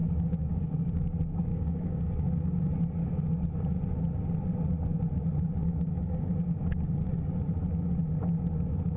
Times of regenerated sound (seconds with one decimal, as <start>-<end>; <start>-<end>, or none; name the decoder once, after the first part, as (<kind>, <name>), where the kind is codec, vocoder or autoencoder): 0.0-1.0 (codec, DAC); 1.5-2.7; 5.6-7.3